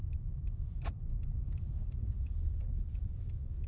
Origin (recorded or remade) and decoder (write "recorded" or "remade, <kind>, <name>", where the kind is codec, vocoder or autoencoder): remade, vocoder, Vocos